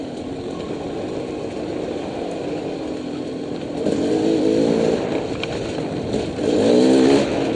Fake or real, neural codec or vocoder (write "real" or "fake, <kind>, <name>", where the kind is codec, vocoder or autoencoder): real